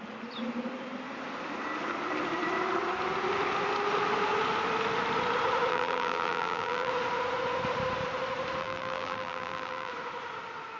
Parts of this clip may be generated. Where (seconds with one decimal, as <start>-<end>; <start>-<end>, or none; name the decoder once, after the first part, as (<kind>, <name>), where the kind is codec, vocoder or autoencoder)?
5.7-6.9 (vocoder, BigVGAN v2); 8.6-9.9